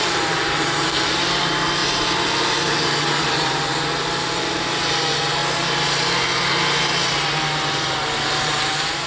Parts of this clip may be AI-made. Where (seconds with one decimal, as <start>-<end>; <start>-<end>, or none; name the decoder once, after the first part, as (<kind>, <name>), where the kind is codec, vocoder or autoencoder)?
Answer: 0.0-1.8 (vocoder, BigVGAN v2); 3.0-3.7; 4.4-5.4; 8.4-9.1

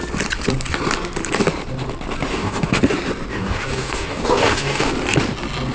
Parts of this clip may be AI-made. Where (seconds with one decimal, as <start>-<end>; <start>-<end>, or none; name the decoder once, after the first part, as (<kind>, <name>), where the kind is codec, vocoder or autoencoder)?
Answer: 2.3-2.8 (codec, DAC); 3.3-4.9

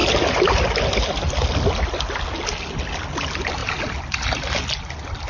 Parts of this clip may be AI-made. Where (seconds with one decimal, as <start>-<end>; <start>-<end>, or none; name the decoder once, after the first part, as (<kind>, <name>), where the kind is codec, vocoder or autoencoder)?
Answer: none

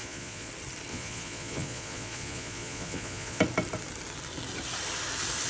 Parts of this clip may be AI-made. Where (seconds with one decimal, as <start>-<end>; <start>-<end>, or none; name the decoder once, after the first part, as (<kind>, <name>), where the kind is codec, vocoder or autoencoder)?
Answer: 0.0-0.5 (vocoder, Vocos); 0.9-3.4

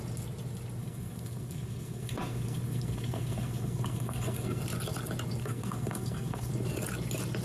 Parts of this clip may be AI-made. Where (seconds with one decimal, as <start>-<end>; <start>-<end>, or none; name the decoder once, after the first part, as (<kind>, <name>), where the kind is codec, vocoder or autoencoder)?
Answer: 0.8-4.6 (codec, SNAC); 5.4-6.5

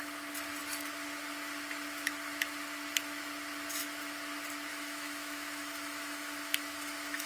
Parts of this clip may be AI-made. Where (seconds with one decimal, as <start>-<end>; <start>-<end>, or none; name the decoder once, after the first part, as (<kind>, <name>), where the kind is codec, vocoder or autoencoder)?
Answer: 4.7-7.3 (autoencoder, DAC-VAE)